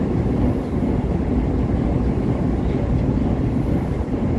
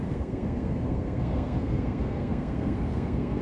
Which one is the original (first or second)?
first